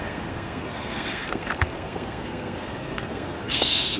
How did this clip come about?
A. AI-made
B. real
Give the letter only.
A